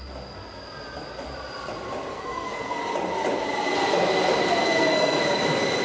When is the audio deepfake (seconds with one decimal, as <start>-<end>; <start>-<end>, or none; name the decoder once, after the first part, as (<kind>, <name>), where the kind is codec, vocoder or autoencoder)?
2.1-2.8 (codec, SNAC); 4.6-5.2